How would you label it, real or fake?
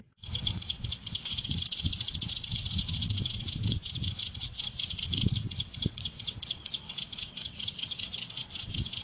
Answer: fake